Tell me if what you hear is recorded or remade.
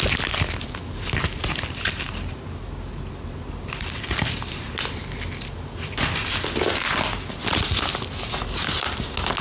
recorded